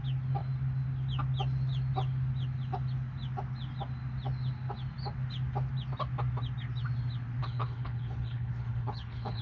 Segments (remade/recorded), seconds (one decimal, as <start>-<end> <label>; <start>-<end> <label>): 0.0-7.4 recorded; 7.4-9.4 remade